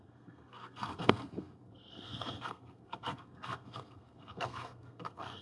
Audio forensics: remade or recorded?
remade